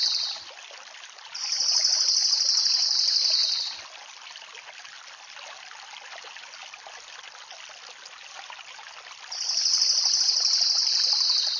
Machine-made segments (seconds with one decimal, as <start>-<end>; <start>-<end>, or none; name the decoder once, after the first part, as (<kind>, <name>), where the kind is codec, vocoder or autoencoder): none